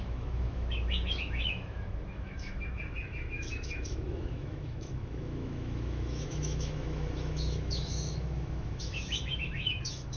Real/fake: fake